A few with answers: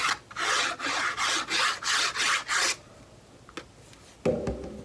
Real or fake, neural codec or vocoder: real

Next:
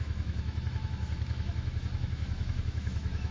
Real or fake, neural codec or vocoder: fake, autoencoder, DAC-VAE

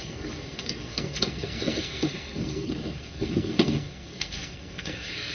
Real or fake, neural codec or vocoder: fake, codec, SNAC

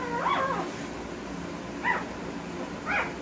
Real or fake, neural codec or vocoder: real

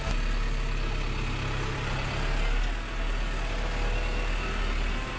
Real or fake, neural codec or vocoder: real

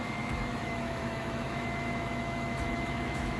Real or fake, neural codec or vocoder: fake, autoencoder, DAC-VAE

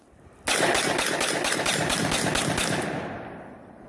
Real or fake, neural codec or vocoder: real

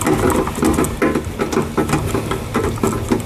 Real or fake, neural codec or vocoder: real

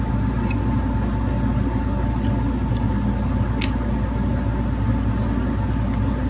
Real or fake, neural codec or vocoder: real